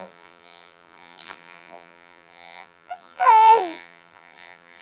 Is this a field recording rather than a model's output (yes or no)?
no